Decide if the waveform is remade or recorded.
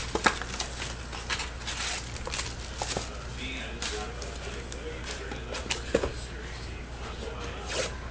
recorded